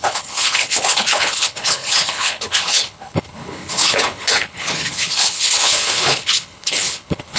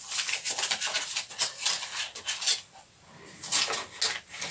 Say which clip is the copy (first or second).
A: first